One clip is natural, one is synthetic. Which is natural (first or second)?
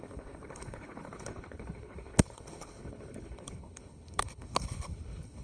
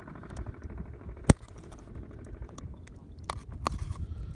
second